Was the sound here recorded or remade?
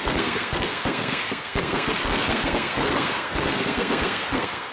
remade